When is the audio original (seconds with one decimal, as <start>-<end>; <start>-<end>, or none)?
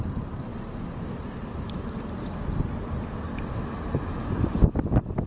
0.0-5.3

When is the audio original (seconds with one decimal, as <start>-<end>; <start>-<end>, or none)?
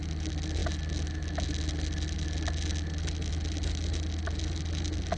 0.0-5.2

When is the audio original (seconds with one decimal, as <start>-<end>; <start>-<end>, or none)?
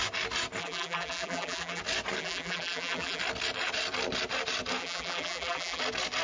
0.0-0.6; 1.8-2.2; 3.2-4.8; 5.8-6.2